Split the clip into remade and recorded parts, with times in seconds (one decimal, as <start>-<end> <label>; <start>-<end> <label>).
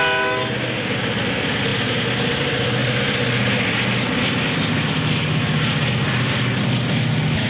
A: 0.0-7.5 recorded